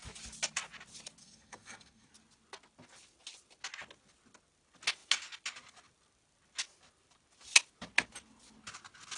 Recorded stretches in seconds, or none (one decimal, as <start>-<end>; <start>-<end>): 0.0-1.2; 2.1-9.2